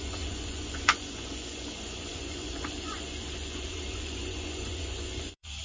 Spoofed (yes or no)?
yes